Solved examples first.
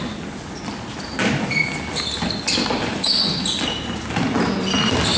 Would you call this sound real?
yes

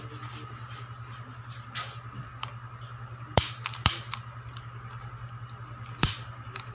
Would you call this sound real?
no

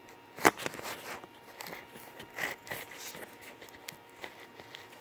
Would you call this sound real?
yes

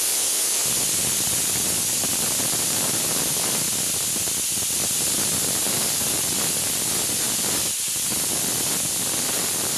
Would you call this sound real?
yes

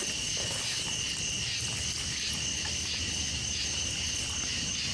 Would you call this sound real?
yes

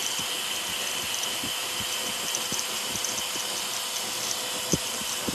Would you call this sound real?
yes